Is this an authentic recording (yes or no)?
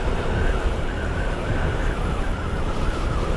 yes